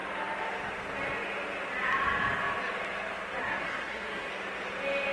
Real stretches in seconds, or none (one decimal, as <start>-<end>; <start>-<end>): 0.0-3.4; 4.3-5.1